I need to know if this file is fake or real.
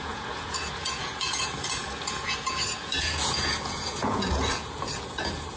fake